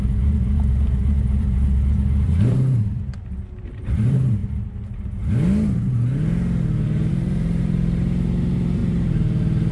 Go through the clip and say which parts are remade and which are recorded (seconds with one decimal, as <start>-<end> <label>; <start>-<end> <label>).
0.0-4.4 remade; 4.4-7.1 recorded; 7.1-9.7 remade